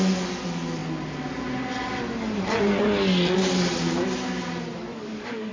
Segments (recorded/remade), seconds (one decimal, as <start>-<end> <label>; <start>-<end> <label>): 0.0-4.9 recorded; 4.9-5.5 remade